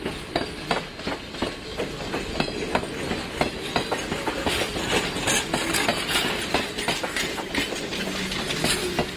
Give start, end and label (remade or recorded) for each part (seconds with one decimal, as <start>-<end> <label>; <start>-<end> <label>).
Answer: 0.0-9.2 recorded